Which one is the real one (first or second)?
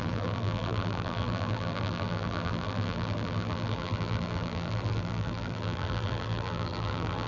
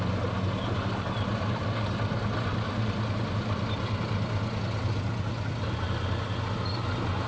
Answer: second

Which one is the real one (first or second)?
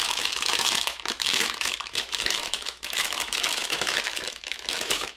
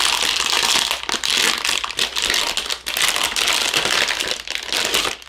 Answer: second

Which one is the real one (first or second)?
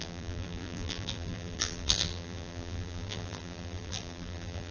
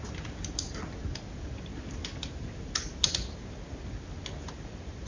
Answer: second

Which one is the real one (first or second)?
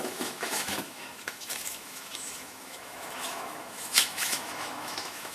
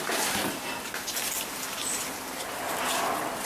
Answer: second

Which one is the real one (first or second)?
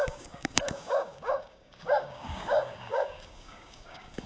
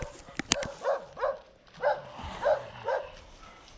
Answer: second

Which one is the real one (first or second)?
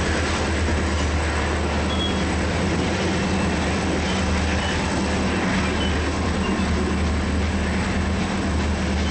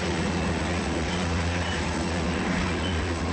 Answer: first